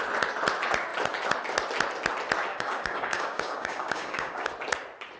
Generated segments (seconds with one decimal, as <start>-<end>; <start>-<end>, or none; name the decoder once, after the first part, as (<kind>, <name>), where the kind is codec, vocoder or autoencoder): 2.5-4.5 (codec, DAC)